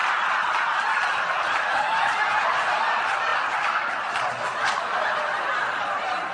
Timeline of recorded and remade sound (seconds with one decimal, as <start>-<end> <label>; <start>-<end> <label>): 0.0-6.3 recorded